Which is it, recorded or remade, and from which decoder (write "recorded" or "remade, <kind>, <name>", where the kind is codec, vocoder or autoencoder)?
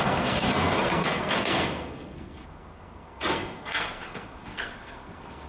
remade, codec, SNAC